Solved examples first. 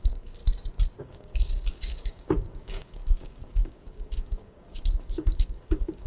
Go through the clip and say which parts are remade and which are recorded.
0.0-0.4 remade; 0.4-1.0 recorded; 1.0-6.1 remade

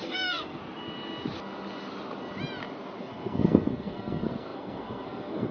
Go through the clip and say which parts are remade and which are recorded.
0.0-0.6 remade; 0.6-3.0 recorded; 3.0-5.5 remade

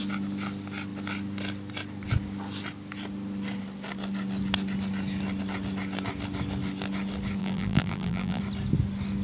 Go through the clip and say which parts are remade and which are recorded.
0.0-7.4 recorded; 7.4-8.4 remade; 8.4-9.2 recorded

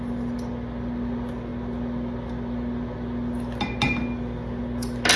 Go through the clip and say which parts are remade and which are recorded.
0.0-5.2 recorded

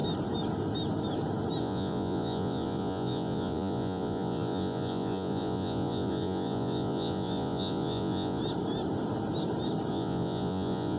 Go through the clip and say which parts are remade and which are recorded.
0.0-1.6 recorded; 1.6-8.4 remade; 8.4-9.9 recorded; 9.9-11.0 remade

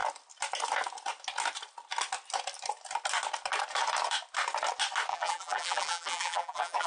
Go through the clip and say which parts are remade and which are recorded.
0.0-5.1 recorded; 5.1-6.9 remade